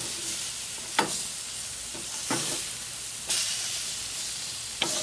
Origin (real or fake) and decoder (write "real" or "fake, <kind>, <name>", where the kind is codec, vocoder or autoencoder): real